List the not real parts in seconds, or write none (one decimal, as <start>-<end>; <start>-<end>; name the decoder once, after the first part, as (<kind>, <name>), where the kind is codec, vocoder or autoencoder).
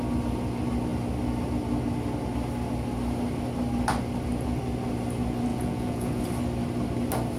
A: 5.5-6.2 (vocoder, Vocos)